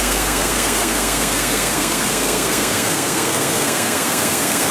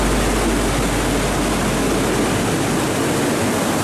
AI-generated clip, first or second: first